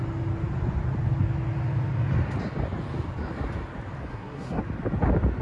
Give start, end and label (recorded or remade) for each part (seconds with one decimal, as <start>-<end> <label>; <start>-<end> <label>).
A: 0.0-4.1 recorded; 4.1-4.6 remade; 4.6-5.4 recorded